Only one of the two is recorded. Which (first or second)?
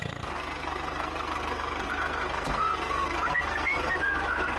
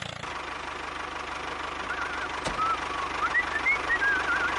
second